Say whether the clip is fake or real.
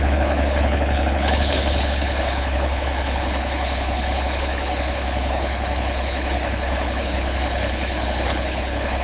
fake